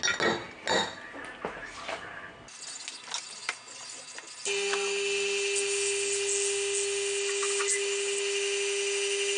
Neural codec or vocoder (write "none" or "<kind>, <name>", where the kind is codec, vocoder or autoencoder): none